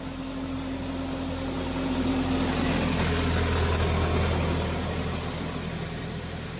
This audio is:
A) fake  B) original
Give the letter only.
B